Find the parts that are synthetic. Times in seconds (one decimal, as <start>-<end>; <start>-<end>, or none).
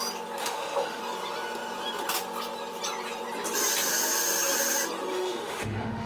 0.4-1.0; 5.1-6.1